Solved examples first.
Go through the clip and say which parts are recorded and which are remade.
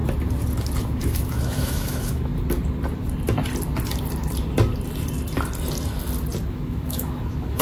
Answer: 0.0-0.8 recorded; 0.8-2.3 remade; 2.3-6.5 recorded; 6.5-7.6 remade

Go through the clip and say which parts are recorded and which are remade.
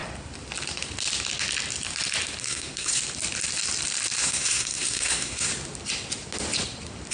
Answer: 0.0-2.4 recorded; 2.4-3.0 remade; 3.0-4.2 recorded; 4.2-5.5 remade; 5.5-7.1 recorded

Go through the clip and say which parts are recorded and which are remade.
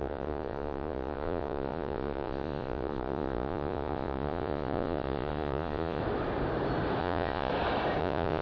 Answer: 0.0-6.0 remade; 6.0-7.0 recorded; 7.0-7.5 remade; 7.5-8.0 recorded; 8.0-8.4 remade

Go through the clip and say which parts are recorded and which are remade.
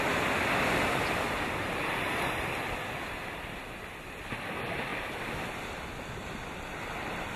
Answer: 0.0-4.9 recorded; 4.9-7.4 remade